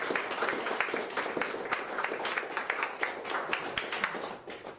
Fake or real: real